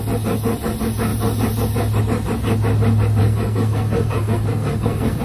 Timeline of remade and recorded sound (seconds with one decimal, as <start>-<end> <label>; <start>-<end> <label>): 0.0-3.2 recorded; 3.2-5.2 remade